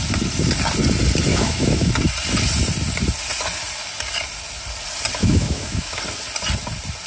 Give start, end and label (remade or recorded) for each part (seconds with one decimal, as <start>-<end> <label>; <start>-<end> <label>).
0.0-1.3 recorded; 1.3-1.9 remade; 1.9-5.2 recorded; 5.2-6.0 remade; 6.0-7.1 recorded